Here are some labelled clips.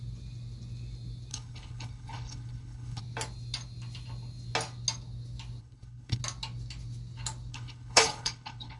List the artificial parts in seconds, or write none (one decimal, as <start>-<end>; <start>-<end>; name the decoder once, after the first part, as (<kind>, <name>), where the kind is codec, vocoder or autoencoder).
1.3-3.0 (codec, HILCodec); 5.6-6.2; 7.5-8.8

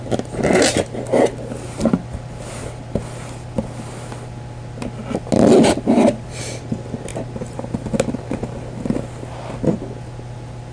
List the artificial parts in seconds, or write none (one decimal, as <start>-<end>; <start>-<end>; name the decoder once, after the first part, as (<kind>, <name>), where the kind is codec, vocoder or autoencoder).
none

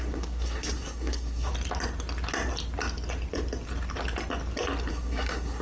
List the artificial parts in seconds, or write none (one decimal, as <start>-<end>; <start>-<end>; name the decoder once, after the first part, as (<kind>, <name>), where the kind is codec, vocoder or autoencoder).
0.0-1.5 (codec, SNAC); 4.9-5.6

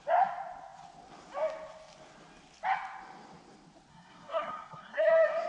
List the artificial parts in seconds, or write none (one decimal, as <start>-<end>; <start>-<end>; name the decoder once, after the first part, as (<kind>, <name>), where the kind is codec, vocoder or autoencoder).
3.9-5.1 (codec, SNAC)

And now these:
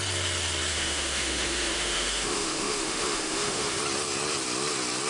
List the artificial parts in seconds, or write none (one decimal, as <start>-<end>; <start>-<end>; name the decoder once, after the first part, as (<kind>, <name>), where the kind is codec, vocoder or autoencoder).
0.7-3.8 (autoencoder, DAC-VAE)

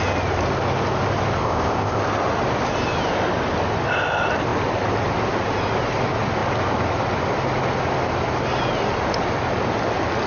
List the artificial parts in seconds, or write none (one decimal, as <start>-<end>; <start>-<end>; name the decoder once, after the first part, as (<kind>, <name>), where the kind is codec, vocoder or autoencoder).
1.4-2.0 (codec, ZipCodec)

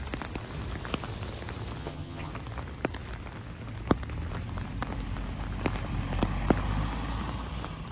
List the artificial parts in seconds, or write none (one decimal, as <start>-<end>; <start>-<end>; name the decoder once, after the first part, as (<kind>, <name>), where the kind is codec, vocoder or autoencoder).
1.8-2.3 (vocoder, HiFi-GAN)

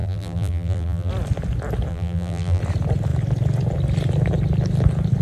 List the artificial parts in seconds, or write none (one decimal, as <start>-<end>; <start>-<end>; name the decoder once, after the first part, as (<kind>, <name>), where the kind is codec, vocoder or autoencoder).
0.0-1.1 (vocoder, BigVGAN v2); 1.9-2.6